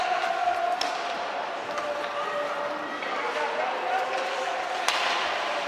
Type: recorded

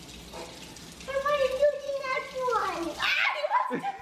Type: recorded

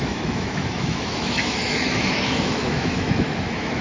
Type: remade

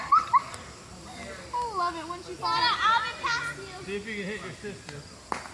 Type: recorded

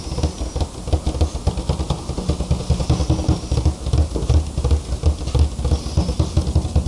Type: recorded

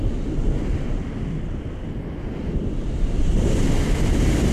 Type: recorded